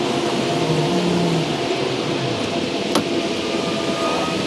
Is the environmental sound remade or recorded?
recorded